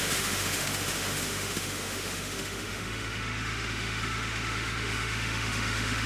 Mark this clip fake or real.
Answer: fake